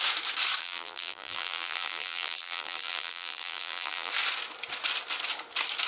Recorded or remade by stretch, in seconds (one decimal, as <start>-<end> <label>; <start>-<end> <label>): 0.0-0.6 recorded; 0.6-4.1 remade; 4.1-5.9 recorded